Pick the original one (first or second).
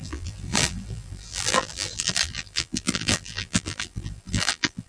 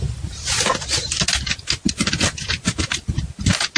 second